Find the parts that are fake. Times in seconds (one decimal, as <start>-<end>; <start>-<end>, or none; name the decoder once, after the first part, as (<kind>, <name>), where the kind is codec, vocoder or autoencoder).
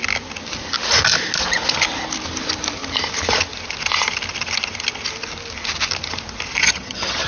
6.6-7.3 (vocoder, HiFi-GAN)